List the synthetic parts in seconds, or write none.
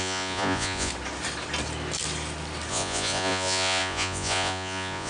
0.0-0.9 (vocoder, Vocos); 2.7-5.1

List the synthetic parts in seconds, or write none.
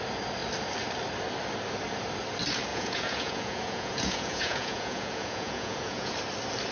2.7-6.1 (vocoder, Vocos)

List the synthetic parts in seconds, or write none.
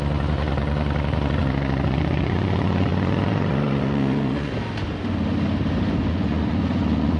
0.0-4.5 (vocoder, Vocos); 6.1-7.2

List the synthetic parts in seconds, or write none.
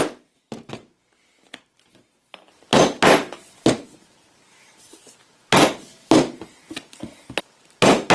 none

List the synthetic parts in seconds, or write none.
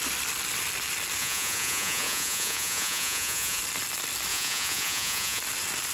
1.2-3.6 (vocoder, Vocos); 4.3-5.4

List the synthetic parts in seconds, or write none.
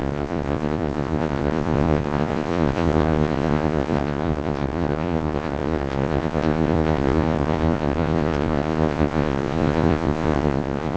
0.0-11.0 (vocoder, Vocos)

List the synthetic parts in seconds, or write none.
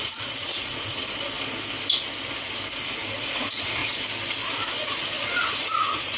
0.0-1.0 (vocoder, Vocos); 3.2-3.8; 4.9-6.2